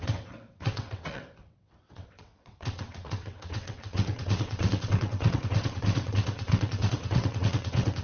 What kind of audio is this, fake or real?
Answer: fake